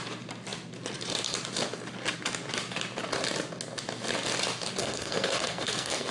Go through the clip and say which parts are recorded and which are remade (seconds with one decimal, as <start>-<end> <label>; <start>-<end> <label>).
0.0-4.8 recorded; 4.8-6.1 remade